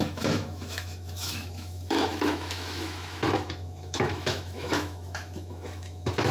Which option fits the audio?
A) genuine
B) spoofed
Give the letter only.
B